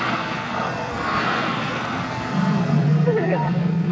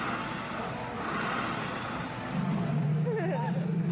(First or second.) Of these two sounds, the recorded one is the second